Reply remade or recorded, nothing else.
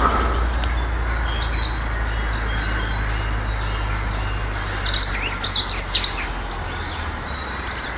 recorded